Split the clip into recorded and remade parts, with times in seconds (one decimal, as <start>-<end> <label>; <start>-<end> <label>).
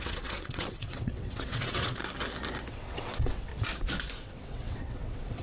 0.0-2.0 remade; 2.0-2.7 recorded; 2.7-3.5 remade; 3.5-4.2 recorded; 4.2-5.4 remade